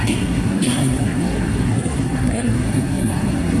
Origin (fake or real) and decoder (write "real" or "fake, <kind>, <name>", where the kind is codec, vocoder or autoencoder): fake, codec, SNAC